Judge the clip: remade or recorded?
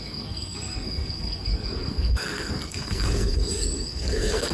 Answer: remade